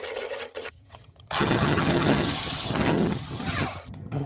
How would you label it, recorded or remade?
remade